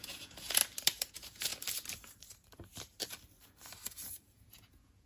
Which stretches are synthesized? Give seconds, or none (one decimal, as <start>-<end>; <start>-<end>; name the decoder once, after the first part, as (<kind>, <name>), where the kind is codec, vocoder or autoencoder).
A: 0.0-0.6 (vocoder, Vocos); 1.1-1.5; 3.9-5.1

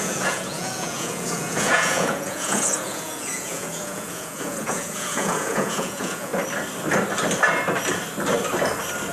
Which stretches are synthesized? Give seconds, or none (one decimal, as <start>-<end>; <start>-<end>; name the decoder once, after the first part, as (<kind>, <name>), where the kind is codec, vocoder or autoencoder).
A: 0.0-6.3 (vocoder, Vocos)

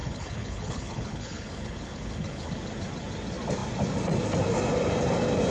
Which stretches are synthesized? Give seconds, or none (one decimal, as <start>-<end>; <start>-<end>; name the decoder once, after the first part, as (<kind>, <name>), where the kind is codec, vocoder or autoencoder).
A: 0.0-2.5 (codec, HILCodec)

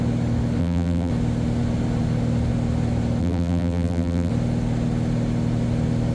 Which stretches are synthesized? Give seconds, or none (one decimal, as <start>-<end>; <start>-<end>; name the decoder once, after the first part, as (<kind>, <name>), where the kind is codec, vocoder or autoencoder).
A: 0.6-1.1 (vocoder, BigVGAN v2); 3.2-4.3

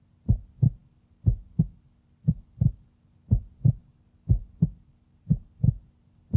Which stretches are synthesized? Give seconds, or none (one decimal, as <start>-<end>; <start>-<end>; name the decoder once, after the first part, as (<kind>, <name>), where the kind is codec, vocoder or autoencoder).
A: none

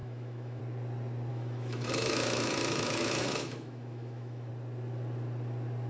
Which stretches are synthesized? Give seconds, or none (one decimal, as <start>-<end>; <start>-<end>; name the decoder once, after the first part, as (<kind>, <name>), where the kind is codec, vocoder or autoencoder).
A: 0.0-0.6 (autoencoder, DAC-VAE); 1.3-4.5

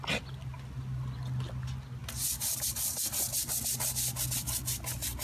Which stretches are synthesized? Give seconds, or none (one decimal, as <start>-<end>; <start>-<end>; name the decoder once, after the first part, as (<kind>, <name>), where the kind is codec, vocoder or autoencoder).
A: none

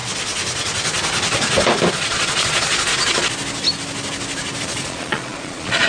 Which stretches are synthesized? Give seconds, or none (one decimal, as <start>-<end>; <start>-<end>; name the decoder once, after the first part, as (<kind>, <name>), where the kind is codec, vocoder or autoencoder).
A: 1.9-2.9 (vocoder, Vocos); 4.6-5.9